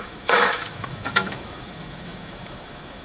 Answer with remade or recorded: remade